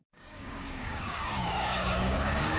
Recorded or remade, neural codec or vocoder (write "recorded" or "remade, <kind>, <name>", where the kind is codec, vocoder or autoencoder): remade, codec, DAC